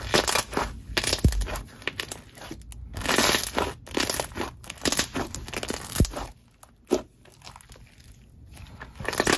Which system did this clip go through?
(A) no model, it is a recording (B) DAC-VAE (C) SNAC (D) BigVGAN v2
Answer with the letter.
A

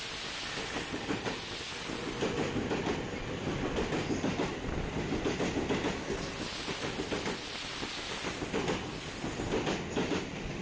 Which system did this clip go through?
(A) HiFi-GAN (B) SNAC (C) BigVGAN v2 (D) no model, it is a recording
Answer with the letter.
D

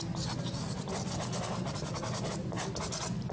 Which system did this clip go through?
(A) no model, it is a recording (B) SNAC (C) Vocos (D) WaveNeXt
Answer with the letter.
A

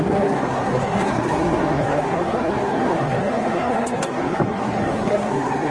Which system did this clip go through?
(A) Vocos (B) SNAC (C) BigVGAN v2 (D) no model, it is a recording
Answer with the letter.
B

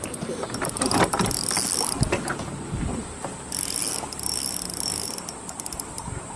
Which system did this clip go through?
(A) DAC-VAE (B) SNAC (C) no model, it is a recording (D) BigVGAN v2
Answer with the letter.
C